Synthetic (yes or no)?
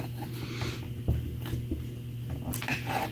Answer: no